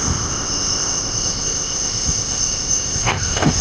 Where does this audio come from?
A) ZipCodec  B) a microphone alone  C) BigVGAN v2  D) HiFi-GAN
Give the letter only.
A